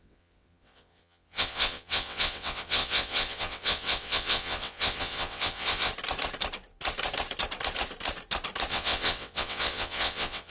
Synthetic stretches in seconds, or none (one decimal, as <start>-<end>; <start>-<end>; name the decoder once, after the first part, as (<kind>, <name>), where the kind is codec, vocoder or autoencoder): 0.0-5.9 (vocoder, WaveNeXt); 8.7-10.5